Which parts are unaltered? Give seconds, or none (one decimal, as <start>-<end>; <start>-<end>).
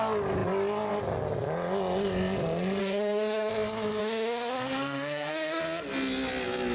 0.0-2.8; 3.5-4.0; 5.6-6.7